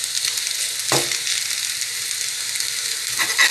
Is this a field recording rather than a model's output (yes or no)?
yes